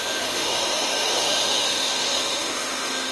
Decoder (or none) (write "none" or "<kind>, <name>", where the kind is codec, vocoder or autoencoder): autoencoder, DAC-VAE